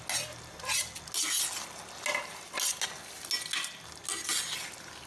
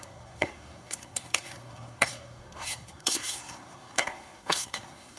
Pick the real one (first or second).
first